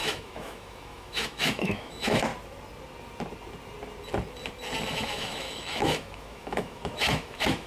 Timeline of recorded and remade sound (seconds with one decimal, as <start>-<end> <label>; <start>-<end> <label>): 0.0-2.3 remade; 2.3-4.9 recorded; 4.9-7.7 remade